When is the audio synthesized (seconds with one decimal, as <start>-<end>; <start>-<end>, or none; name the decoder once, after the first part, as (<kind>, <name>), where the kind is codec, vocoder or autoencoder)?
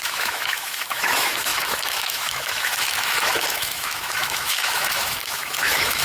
0.0-6.0 (autoencoder, DAC-VAE)